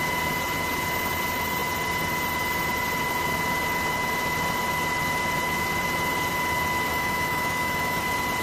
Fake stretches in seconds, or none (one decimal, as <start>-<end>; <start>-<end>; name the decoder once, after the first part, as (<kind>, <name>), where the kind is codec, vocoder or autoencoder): 6.9-8.0 (autoencoder, DAC-VAE)